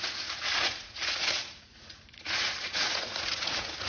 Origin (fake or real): fake